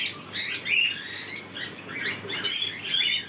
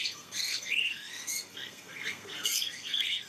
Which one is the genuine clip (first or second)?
first